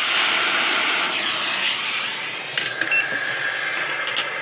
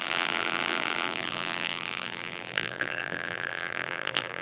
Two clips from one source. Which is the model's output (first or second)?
second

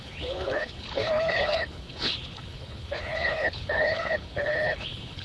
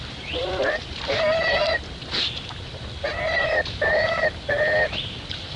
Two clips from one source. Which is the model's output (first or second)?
first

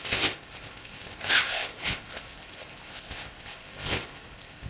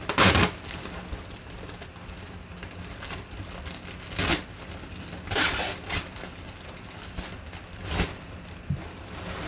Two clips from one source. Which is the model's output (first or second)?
first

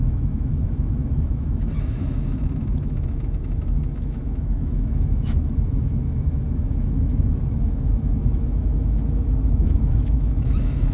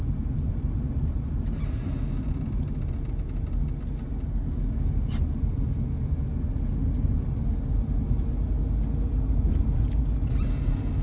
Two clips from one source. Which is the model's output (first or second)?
first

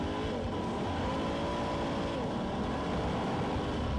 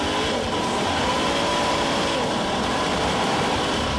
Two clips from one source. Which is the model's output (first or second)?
second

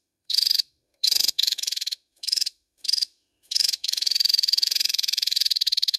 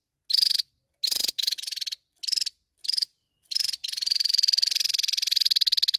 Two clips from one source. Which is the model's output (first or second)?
first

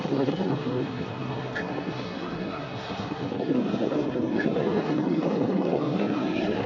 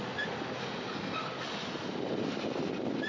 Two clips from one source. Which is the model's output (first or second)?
first